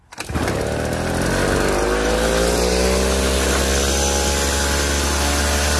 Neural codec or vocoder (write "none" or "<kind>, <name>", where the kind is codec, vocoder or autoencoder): none